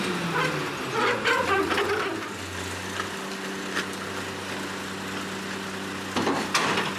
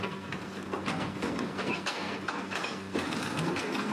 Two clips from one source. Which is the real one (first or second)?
first